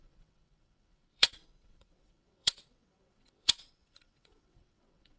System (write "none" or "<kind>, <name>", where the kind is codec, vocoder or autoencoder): vocoder, WaveNeXt